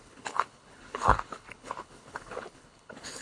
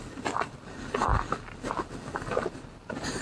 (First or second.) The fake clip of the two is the first